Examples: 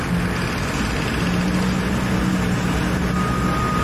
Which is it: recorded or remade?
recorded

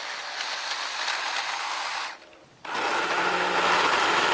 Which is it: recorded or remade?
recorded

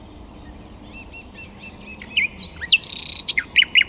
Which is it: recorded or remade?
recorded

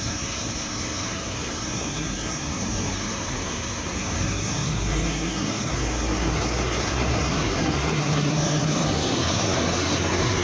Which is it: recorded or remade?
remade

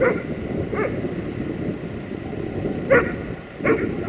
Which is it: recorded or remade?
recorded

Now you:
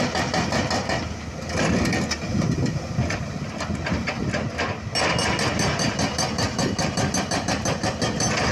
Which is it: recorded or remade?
recorded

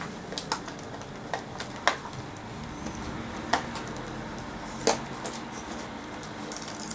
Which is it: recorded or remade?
recorded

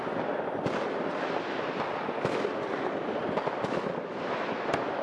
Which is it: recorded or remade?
recorded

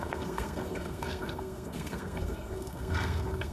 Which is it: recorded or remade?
remade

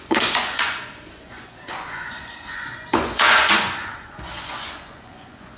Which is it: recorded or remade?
remade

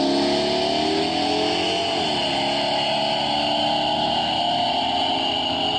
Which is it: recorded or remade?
recorded